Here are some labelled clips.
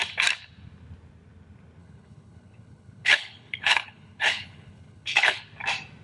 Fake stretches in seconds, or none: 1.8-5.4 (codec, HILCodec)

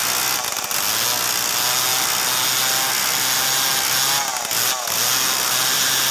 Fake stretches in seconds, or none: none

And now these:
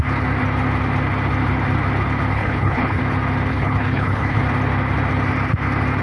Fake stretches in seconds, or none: 2.3-3.0 (codec, HILCodec); 3.5-4.4